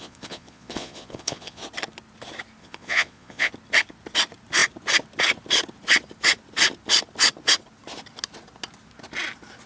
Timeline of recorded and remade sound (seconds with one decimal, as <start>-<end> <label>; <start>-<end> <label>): 0.0-1.6 remade; 1.6-2.6 recorded; 2.6-3.5 remade; 3.5-9.7 recorded